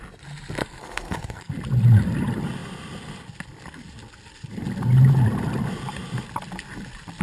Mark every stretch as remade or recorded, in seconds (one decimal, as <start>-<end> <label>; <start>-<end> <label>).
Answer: 0.0-0.6 recorded; 0.6-1.5 remade; 1.5-7.2 recorded